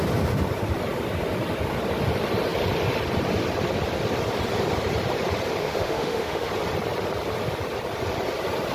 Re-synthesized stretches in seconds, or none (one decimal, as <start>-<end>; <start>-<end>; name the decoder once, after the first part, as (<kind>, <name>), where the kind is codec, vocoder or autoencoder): 5.6-6.5 (autoencoder, DAC-VAE)